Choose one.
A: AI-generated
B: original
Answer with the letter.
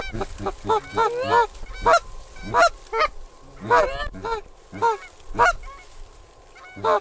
B